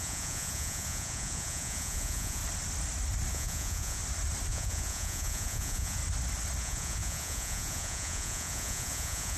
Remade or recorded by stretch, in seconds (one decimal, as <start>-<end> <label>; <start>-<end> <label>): 0.0-2.4 remade; 2.4-3.3 recorded; 3.3-4.0 remade; 4.0-4.5 recorded; 4.5-6.0 remade; 6.0-6.6 recorded; 6.6-9.4 remade